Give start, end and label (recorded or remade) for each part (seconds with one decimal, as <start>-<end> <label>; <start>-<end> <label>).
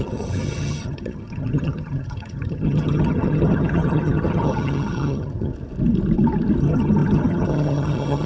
0.0-5.5 remade; 5.5-6.6 recorded; 6.6-8.3 remade